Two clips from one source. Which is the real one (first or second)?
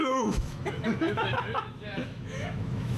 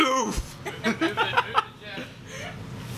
second